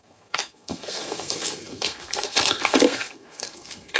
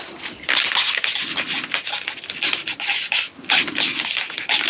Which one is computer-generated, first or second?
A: first